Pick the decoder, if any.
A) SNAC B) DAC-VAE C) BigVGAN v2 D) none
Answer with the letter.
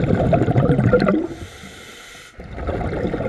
D